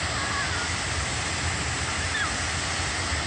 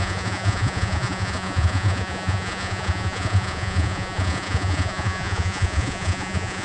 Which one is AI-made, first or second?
second